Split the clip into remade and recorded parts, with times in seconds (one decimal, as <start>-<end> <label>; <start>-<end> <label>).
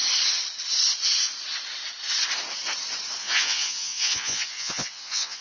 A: 0.0-3.2 recorded; 3.2-5.4 remade